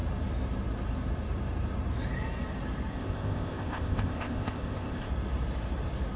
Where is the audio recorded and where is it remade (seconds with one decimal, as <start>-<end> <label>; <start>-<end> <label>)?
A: 0.0-2.9 recorded; 2.9-5.1 remade; 5.1-6.2 recorded